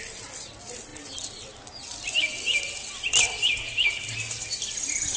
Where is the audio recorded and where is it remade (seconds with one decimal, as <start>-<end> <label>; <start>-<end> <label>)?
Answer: 0.0-5.2 recorded

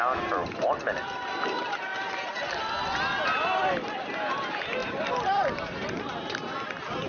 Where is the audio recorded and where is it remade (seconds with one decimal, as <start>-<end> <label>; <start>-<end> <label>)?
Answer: 0.0-4.8 recorded; 4.8-5.6 remade; 5.6-7.1 recorded

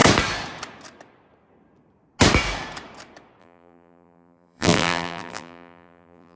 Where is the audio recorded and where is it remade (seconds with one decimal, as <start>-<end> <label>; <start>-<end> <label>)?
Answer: 0.0-3.4 recorded; 3.4-6.4 remade

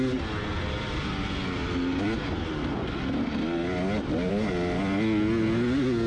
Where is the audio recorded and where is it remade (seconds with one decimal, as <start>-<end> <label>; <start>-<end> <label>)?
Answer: 0.0-0.5 recorded; 0.5-1.1 remade; 1.1-6.1 recorded

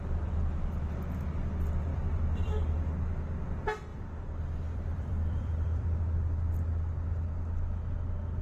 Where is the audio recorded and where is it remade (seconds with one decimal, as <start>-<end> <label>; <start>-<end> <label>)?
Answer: 0.0-1.9 recorded; 1.9-2.5 remade; 2.5-3.9 recorded; 3.9-6.0 remade; 6.0-8.4 recorded

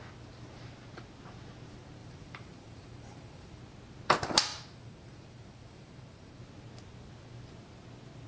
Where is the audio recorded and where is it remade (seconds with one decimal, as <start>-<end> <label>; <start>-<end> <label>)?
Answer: 0.0-2.0 recorded; 2.0-3.6 remade; 3.6-4.5 recorded; 4.5-6.4 remade; 6.4-8.3 recorded